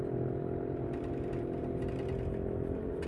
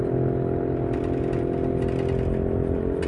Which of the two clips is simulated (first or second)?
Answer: first